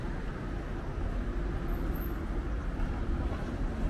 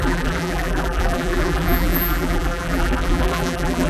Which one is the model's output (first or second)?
second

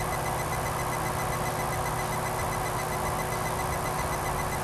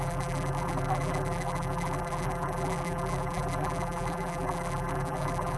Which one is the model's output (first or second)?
second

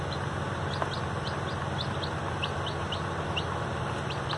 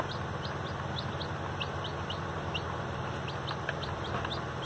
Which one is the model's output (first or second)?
first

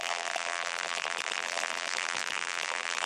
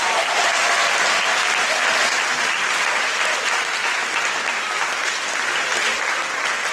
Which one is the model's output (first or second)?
first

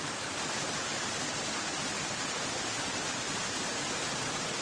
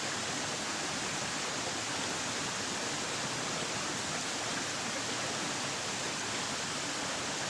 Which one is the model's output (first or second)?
first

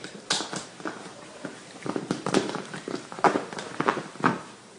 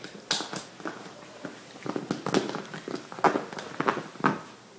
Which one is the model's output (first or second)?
first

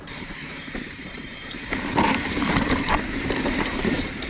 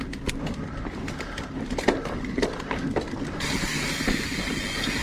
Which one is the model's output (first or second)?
first